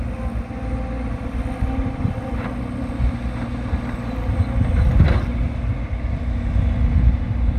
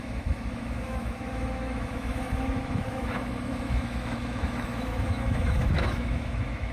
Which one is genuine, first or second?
first